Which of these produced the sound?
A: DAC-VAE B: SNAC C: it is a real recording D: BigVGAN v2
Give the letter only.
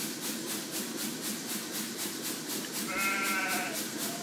C